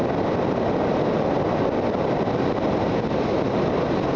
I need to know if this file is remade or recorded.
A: recorded